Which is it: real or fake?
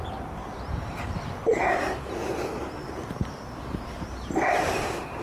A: fake